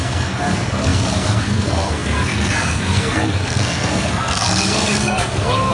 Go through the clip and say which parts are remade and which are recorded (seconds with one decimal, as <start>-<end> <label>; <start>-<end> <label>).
0.0-5.7 remade